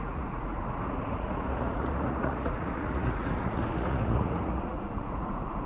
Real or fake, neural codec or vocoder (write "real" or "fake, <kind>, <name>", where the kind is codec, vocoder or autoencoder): fake, vocoder, Vocos